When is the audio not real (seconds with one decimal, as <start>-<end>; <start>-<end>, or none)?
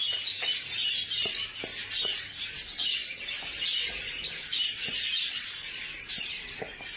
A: none